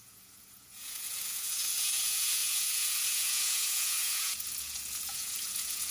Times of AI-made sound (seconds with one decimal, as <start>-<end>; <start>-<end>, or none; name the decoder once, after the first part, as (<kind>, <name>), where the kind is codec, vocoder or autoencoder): 0.0-5.9 (vocoder, Vocos)